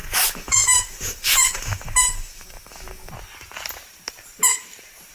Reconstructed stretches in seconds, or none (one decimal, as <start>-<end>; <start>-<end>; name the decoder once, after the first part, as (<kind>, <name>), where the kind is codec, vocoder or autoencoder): 0.0-3.1 (autoencoder, DAC-VAE)